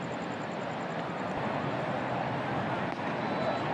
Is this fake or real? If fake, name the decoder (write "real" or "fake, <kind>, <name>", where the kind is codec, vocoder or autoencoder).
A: real